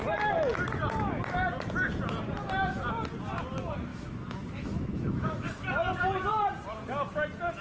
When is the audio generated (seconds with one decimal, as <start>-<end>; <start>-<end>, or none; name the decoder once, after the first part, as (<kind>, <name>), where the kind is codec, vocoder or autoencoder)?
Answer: 3.9-5.6 (autoencoder, DAC-VAE)